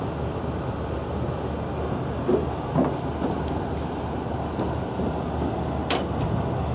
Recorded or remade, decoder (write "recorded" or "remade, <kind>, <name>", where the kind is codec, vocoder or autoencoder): recorded